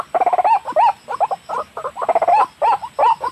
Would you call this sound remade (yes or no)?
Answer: no